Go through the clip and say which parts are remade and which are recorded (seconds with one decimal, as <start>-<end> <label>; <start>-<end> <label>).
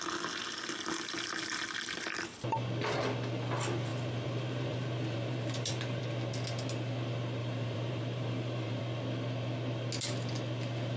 0.0-3.9 recorded; 3.9-6.0 remade; 6.0-7.4 recorded; 7.4-8.8 remade; 8.8-11.0 recorded